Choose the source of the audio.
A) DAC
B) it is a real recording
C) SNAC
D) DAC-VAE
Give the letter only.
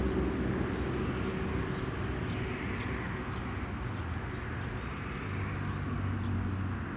B